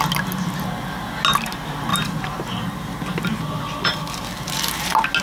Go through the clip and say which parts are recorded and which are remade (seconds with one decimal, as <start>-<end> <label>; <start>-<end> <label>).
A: 0.0-5.2 recorded